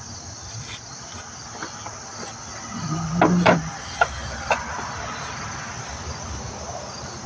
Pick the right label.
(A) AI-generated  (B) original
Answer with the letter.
B